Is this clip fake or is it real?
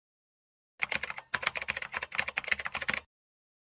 real